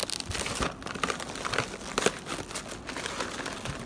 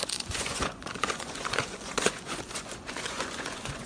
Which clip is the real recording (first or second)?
first